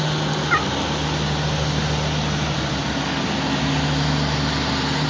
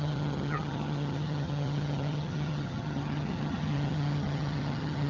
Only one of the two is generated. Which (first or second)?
second